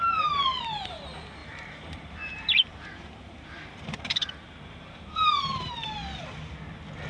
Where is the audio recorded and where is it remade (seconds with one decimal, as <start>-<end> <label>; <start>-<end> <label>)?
0.0-1.4 recorded; 1.4-5.7 remade; 5.7-7.1 recorded